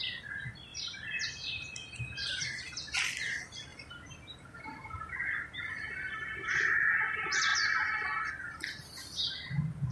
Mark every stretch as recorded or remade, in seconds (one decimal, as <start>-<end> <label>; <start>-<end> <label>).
0.0-0.7 recorded; 0.7-2.4 remade; 2.4-3.7 recorded; 3.7-6.9 remade; 6.9-9.9 recorded